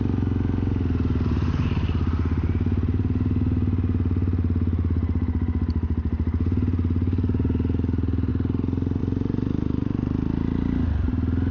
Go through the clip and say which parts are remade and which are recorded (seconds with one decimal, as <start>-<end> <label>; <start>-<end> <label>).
0.0-11.5 recorded